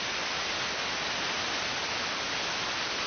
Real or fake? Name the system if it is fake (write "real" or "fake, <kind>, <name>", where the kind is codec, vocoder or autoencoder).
real